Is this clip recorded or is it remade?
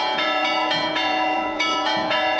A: remade